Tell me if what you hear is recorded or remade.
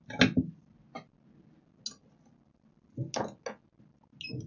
recorded